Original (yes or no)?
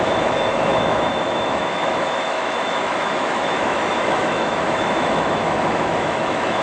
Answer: no